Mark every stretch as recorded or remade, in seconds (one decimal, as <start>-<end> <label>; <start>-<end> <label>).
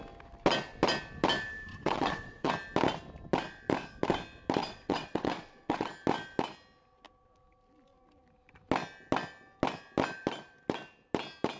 0.0-1.7 recorded; 1.7-2.5 remade; 2.5-4.6 recorded; 4.6-5.9 remade; 5.9-11.6 recorded